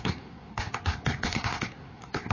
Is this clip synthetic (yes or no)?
yes